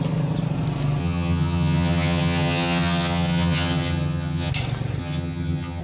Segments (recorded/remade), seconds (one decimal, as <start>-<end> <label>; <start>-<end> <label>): 0.0-1.0 recorded; 1.0-4.5 remade; 4.5-5.0 recorded; 5.0-5.8 remade